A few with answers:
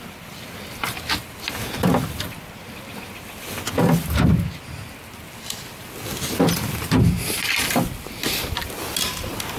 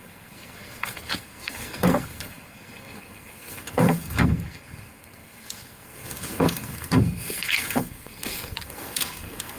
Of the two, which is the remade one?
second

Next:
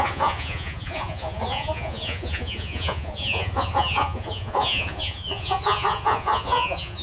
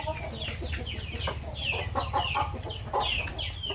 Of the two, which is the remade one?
first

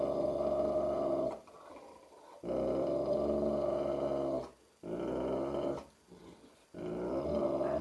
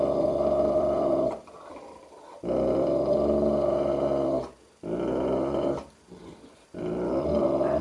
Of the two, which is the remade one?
second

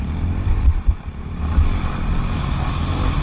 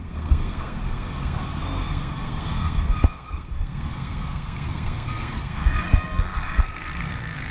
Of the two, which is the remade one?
second